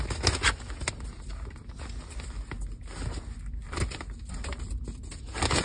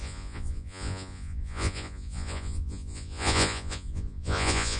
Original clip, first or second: first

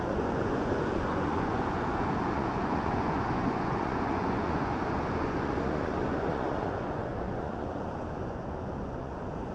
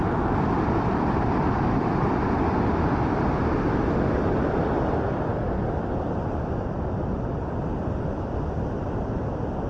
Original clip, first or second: second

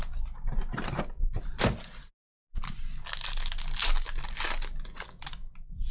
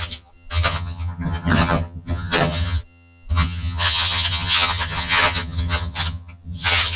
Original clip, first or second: first